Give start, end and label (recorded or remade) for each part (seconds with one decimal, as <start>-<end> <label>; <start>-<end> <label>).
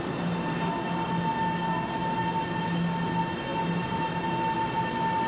0.0-5.3 recorded